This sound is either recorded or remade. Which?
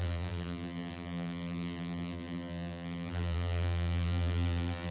remade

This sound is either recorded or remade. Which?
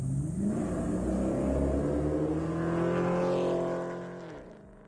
recorded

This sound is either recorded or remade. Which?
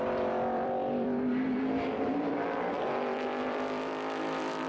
remade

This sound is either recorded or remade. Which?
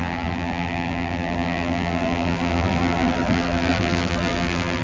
remade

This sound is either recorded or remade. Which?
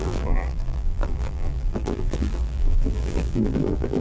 remade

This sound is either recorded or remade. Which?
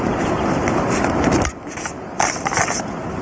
recorded